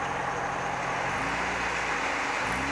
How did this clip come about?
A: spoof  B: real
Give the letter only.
B